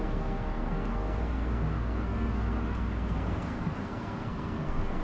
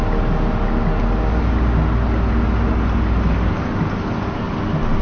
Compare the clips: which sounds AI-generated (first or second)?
first